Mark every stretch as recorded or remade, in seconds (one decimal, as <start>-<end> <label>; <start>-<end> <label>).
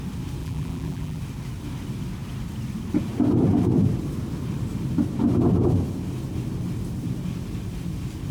0.0-0.4 recorded; 0.4-1.2 remade; 1.2-8.3 recorded